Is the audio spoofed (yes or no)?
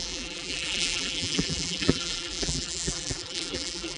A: yes